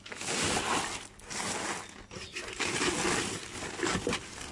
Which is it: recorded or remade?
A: recorded